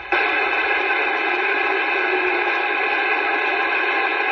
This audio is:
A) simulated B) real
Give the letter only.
B